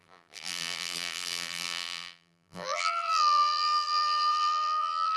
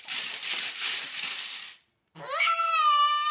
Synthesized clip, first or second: first